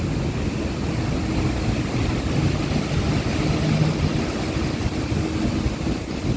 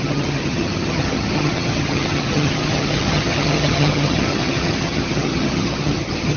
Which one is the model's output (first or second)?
second